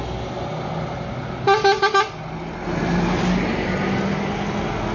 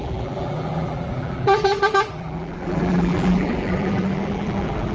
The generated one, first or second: second